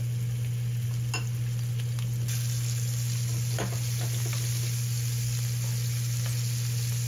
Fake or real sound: real